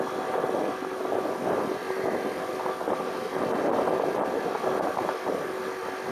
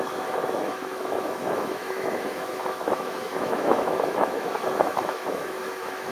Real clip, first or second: first